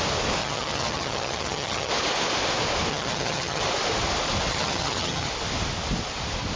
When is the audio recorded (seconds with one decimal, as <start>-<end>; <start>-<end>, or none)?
0.0-0.4; 1.9-2.9; 3.6-4.5; 5.3-6.6